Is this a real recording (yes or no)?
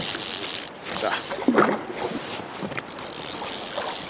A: yes